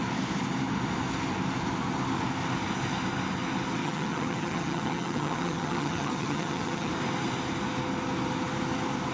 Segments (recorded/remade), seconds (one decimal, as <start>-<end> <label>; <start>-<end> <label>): 0.0-3.8 recorded; 3.8-6.9 remade; 6.9-9.1 recorded